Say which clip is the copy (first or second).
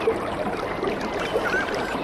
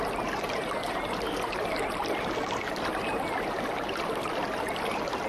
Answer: first